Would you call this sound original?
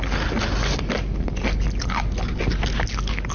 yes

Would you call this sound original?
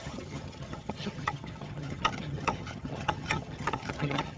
no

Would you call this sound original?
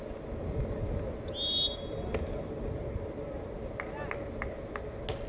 yes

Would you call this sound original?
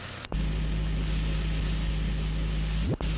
yes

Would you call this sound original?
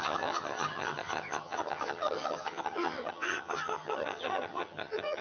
no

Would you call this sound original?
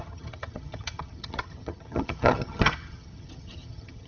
no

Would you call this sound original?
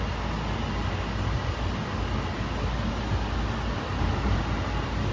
yes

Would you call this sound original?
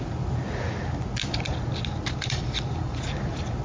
yes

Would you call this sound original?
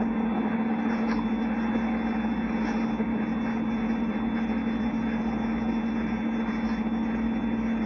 yes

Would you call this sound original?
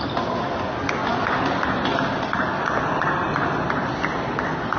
yes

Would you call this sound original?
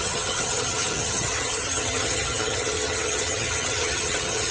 no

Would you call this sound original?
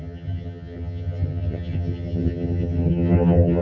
no